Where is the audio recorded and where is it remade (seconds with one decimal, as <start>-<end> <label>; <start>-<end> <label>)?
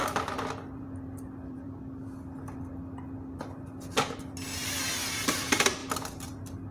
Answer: 0.0-1.8 remade; 1.8-6.7 recorded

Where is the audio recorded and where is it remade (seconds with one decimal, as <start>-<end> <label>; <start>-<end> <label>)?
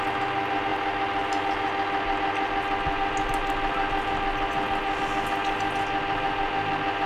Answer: 0.0-7.1 recorded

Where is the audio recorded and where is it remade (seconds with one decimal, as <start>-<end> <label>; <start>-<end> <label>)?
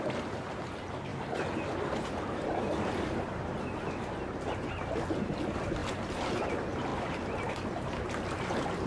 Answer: 0.0-8.9 recorded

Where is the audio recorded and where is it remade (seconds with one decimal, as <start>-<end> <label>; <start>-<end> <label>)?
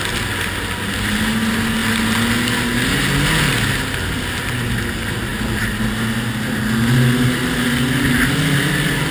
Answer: 0.0-9.1 recorded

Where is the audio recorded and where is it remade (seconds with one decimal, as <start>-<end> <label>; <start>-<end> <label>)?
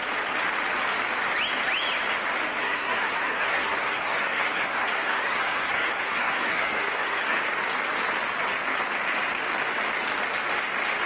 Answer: 0.0-2.6 recorded; 2.6-7.4 remade; 7.4-11.1 recorded